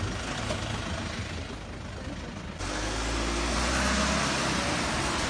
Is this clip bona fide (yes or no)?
yes